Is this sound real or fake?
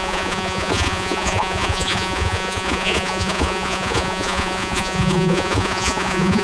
fake